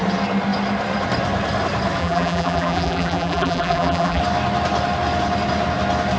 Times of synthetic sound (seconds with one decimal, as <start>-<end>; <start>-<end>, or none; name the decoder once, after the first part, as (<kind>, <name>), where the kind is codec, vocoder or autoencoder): 2.0-4.2 (vocoder, BigVGAN v2)